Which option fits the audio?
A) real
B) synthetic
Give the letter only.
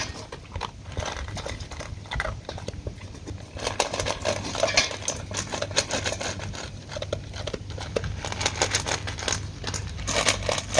A